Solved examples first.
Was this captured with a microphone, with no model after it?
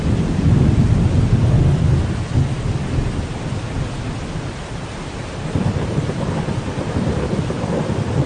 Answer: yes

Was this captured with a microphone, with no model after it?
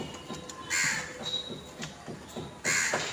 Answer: yes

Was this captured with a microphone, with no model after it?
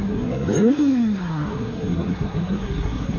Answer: no